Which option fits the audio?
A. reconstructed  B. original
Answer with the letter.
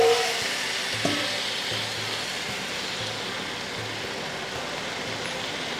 B